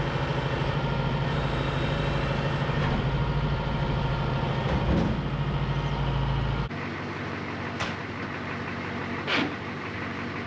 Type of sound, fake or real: real